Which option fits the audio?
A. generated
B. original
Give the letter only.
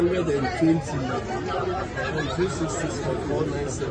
B